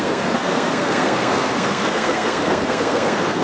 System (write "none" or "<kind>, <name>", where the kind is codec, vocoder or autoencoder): codec, SNAC